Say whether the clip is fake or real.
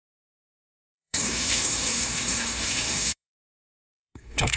fake